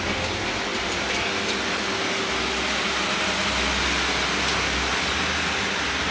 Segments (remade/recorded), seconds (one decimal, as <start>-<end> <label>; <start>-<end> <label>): 0.0-6.1 recorded